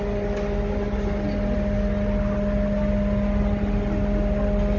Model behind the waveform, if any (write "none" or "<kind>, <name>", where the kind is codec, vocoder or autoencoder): none